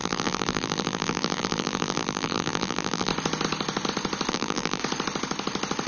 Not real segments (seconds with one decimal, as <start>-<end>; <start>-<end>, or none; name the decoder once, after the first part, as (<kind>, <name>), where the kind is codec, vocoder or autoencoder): 0.0-3.1 (vocoder, BigVGAN v2); 4.3-4.8